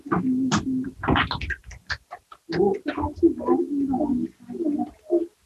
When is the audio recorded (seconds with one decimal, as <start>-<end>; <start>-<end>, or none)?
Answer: 0.0-1.6; 2.1-5.5